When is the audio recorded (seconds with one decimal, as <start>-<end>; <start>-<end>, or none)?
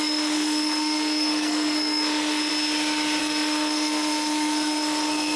2.5-3.2